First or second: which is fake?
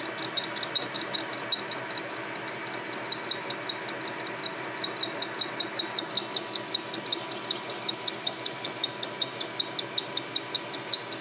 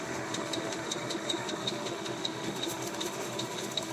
second